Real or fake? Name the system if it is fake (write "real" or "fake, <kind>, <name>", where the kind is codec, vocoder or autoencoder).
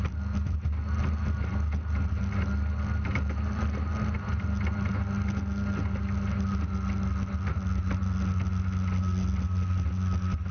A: real